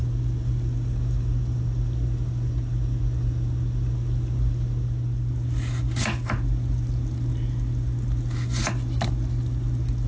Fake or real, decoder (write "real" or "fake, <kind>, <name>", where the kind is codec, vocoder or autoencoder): real